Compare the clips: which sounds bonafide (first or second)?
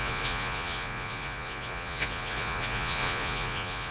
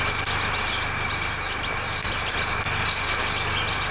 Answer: second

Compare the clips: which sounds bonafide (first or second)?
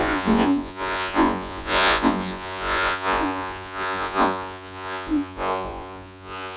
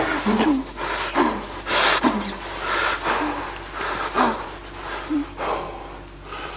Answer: second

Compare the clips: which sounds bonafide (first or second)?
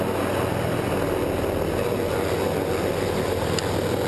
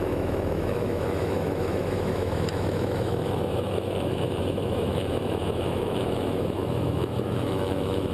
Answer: first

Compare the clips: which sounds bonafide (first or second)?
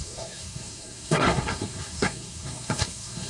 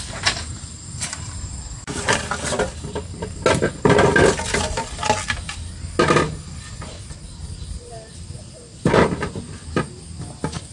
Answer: second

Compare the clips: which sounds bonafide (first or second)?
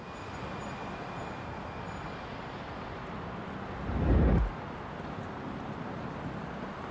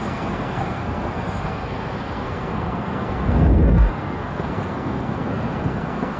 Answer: first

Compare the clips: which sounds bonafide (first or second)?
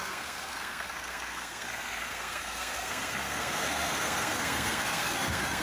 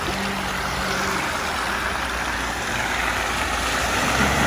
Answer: second